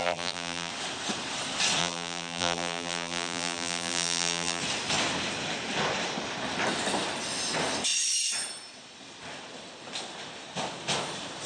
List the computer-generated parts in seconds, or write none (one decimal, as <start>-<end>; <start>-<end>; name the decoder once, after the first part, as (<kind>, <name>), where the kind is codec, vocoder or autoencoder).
0.0-0.7 (vocoder, BigVGAN v2); 1.8-4.6